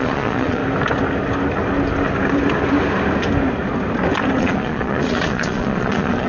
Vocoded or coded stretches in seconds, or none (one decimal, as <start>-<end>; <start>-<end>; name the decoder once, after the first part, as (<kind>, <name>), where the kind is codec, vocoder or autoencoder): 0.0-0.6 (vocoder, Vocos); 4.4-6.3